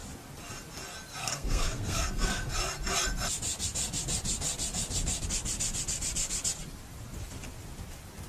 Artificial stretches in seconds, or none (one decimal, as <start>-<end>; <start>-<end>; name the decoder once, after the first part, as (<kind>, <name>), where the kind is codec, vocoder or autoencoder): 1.2-2.5 (codec, SNAC)